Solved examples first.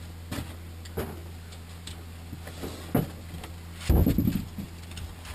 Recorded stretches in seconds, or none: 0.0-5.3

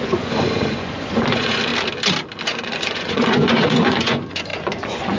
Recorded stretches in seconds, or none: 1.7-2.4

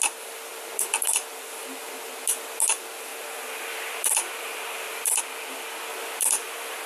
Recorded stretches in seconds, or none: 0.0-3.1; 5.2-5.9